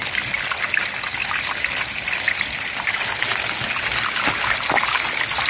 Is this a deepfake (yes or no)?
no